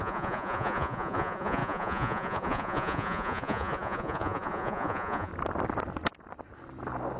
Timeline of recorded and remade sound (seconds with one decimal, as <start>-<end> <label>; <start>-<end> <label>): 0.0-5.3 remade; 5.3-7.2 recorded